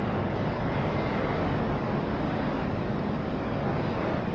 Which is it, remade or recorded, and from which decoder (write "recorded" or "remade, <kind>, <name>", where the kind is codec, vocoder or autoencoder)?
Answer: remade, codec, DAC